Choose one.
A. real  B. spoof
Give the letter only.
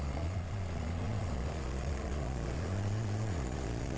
B